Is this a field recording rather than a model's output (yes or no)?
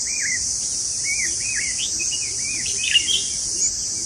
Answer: yes